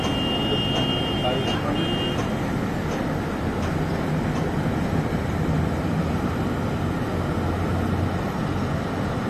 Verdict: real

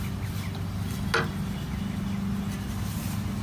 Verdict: real